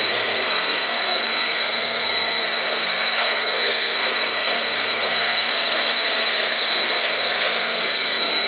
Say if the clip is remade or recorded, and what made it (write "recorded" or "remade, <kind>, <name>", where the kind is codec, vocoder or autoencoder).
remade, codec, SNAC